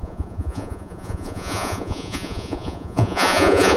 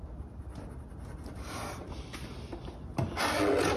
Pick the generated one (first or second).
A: first